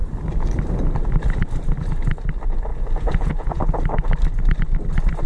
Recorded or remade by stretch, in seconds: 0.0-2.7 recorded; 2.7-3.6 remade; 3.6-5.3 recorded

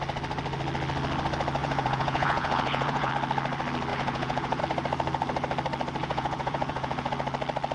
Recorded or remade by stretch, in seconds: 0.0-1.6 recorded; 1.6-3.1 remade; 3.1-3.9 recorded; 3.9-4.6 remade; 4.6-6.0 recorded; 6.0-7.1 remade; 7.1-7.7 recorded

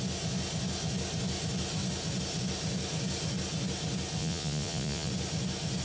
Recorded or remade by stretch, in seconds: 0.0-4.2 recorded; 4.2-5.1 remade; 5.1-5.8 recorded

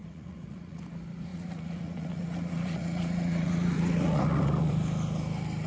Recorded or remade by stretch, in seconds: 0.0-0.8 remade; 0.8-1.3 recorded; 1.3-4.7 remade; 4.7-5.7 recorded